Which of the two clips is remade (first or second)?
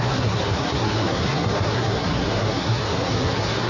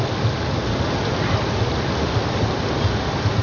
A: first